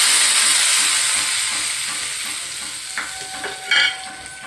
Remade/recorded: recorded